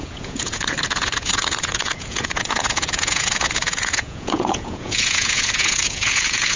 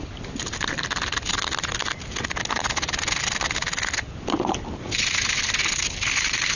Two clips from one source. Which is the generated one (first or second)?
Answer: first